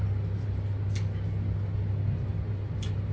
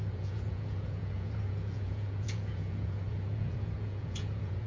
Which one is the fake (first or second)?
second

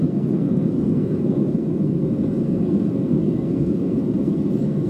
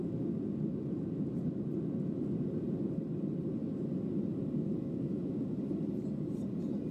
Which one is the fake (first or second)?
first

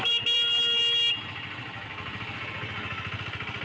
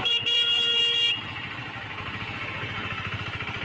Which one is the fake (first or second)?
second